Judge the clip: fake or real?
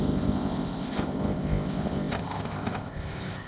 fake